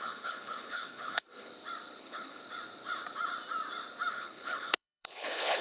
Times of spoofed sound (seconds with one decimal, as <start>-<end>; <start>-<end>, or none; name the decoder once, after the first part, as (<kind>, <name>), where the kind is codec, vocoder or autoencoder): 0.0-1.5 (codec, HILCodec); 2.0-2.4; 4.1-5.6